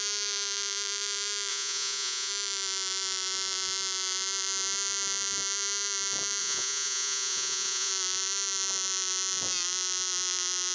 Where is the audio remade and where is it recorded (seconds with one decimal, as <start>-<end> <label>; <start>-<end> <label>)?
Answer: 0.0-1.5 recorded; 1.5-2.3 remade; 2.3-6.4 recorded; 6.4-7.9 remade; 7.9-10.7 recorded